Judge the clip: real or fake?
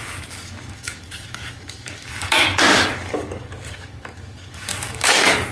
fake